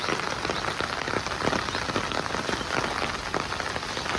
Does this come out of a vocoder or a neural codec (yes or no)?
no